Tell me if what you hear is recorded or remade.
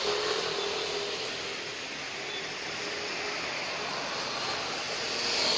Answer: recorded